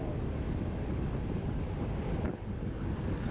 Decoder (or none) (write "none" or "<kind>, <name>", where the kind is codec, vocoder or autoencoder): none